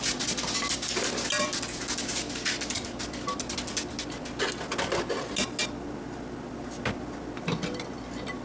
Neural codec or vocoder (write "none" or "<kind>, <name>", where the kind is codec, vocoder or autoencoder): none